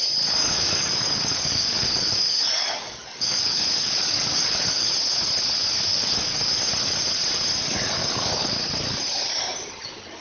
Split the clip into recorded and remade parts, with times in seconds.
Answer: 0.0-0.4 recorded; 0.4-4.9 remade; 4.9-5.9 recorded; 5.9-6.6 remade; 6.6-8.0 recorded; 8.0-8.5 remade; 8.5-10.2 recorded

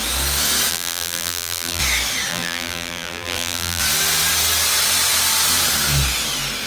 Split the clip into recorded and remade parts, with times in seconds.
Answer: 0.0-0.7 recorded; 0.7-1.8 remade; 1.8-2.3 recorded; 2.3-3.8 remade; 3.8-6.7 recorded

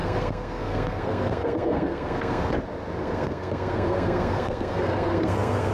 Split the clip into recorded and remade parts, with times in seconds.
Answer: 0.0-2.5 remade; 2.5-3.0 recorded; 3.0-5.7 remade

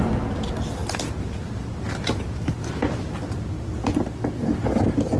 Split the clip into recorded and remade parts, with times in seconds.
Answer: 0.0-5.2 recorded

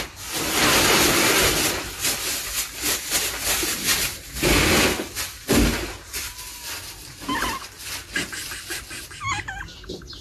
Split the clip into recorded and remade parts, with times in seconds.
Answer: 0.0-10.2 recorded